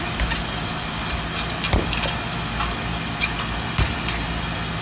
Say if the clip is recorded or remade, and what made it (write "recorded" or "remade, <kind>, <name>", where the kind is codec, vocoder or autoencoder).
recorded